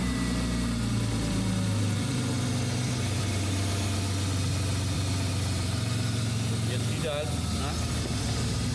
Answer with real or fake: real